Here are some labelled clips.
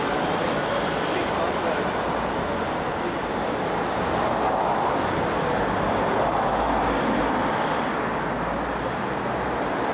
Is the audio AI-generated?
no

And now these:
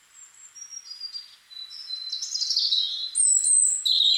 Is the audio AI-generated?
no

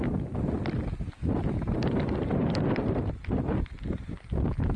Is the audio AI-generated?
no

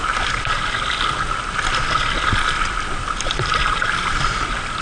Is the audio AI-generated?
no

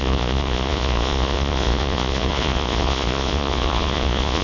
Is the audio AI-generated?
yes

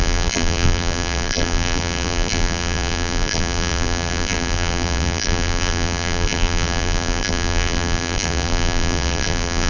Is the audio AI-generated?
yes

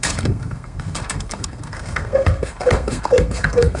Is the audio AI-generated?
yes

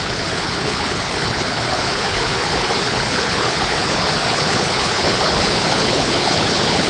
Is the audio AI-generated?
yes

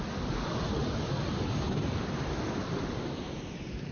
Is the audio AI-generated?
no